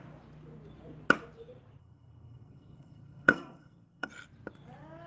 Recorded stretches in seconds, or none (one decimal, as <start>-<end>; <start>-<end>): 0.0-1.8; 4.1-5.1